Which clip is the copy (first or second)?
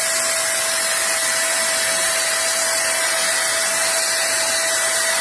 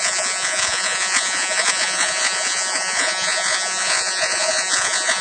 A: second